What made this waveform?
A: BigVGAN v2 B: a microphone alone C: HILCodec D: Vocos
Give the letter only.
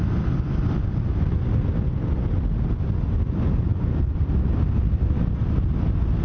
B